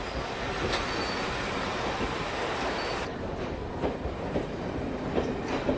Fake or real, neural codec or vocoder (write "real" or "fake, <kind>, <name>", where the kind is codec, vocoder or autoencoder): real